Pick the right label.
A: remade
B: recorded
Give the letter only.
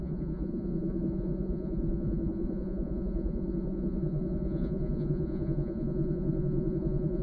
A